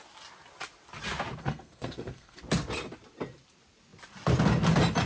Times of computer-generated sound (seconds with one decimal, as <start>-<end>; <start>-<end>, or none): 1.4-2.4